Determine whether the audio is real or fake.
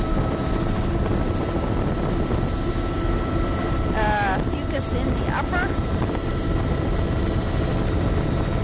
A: real